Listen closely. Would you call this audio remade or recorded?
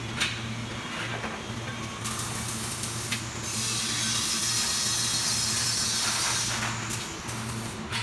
recorded